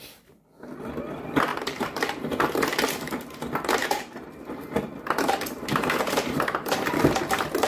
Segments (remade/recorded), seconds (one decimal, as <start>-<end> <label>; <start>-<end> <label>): 0.0-1.5 recorded; 1.5-2.1 remade; 2.1-3.8 recorded; 3.8-7.2 remade; 7.2-7.7 recorded